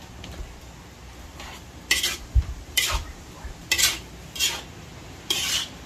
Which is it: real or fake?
real